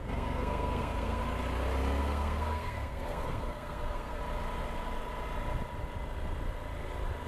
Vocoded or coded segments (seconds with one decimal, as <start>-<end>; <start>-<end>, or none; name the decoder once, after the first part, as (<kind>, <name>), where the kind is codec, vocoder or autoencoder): 0.0-1.2 (codec, SNAC); 2.0-4.2